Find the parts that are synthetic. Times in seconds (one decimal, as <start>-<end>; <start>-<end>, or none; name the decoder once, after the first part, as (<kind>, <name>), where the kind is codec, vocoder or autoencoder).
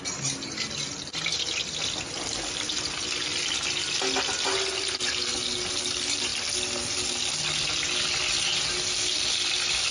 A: none